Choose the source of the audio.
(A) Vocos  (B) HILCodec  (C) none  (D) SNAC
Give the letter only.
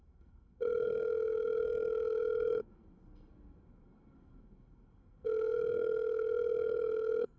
D